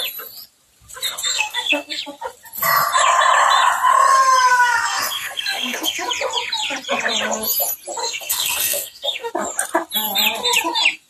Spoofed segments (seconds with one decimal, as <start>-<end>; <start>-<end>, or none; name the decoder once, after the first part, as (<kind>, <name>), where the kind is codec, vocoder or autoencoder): 1.3-2.0 (codec, SNAC); 4.5-6.1; 8.0-9.3